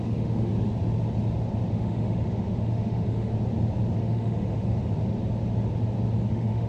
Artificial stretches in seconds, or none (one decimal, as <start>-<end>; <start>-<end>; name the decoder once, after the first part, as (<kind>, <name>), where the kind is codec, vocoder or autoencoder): 0.0-0.5 (autoencoder, DAC-VAE); 1.7-3.3; 4.0-4.8; 6.3-6.7